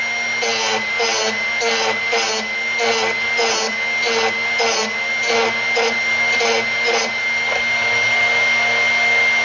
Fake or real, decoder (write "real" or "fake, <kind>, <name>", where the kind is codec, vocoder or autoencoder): real